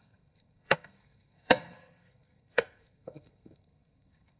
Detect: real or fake fake